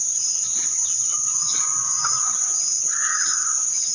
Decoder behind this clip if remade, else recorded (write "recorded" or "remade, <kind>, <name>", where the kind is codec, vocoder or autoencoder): remade, vocoder, Vocos